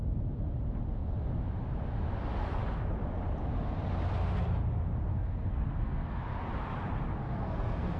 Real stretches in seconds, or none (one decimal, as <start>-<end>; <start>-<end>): 0.0-5.1; 6.2-7.2